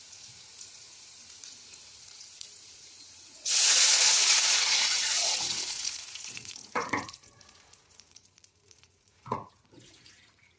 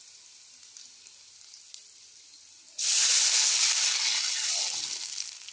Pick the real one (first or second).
second